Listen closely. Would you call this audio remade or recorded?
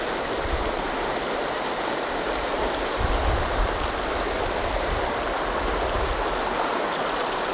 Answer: recorded